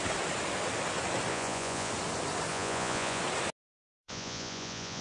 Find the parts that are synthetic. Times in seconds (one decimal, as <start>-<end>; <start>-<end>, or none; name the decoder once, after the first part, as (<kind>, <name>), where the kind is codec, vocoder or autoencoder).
1.3-1.9 (vocoder, Vocos); 2.5-3.2; 3.9-5.0